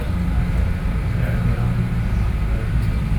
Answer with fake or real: real